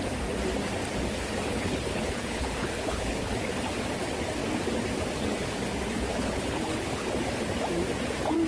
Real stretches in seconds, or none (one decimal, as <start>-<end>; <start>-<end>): 0.0-1.5; 3.3-6.1; 7.1-8.5

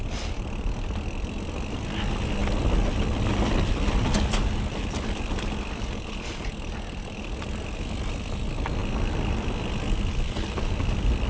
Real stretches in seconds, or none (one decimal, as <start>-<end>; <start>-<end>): 0.0-11.3

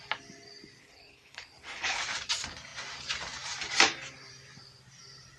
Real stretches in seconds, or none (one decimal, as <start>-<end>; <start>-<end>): 0.0-0.8; 2.0-5.4

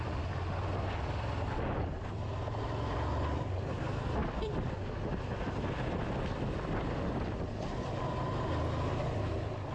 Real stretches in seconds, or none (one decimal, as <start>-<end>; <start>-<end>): 0.0-9.7

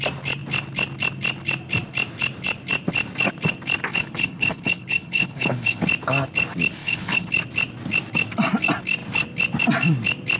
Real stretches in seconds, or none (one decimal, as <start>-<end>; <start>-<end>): 0.0-3.9; 5.8-6.8; 7.3-10.4

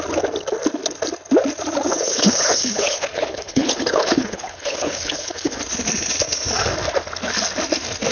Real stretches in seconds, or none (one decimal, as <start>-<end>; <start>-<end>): 0.0-1.9; 5.6-8.1

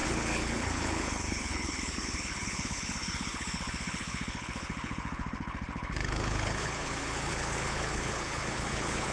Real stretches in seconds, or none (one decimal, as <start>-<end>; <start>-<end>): none

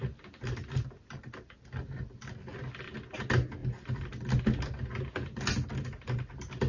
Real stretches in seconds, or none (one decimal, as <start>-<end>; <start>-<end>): 0.0-6.7